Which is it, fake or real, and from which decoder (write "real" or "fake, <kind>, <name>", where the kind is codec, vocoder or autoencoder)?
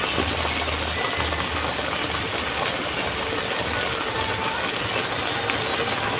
real